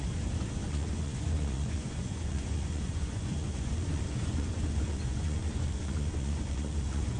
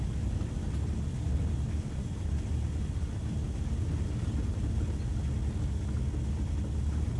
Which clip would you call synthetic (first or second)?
first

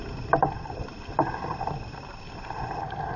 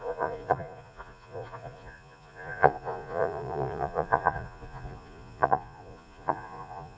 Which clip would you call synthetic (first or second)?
second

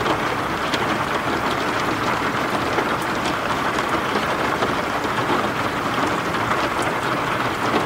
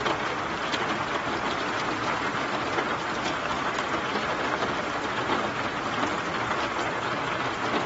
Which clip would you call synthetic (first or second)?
first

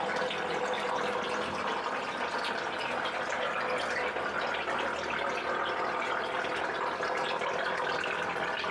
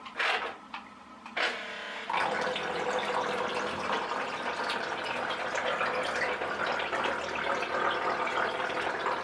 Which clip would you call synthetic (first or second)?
second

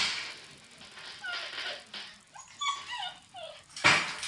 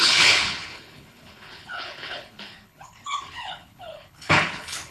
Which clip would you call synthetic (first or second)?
second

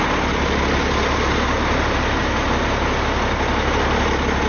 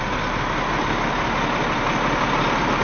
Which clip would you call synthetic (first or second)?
second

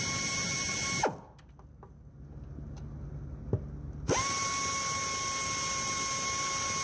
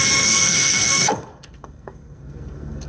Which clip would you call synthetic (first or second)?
second